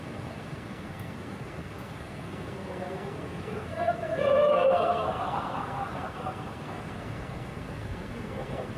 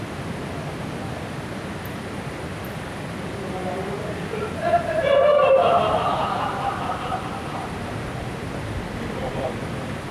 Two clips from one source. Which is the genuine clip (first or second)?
second